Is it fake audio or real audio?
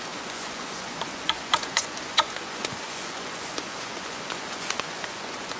fake